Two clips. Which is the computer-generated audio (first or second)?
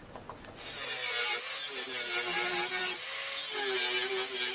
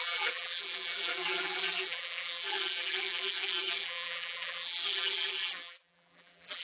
second